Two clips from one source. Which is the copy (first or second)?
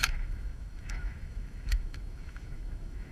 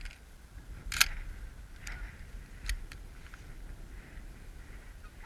first